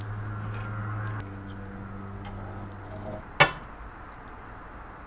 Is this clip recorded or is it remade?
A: recorded